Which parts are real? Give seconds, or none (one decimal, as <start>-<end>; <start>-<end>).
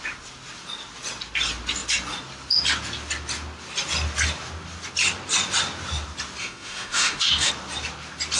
0.0-6.4; 7.5-8.4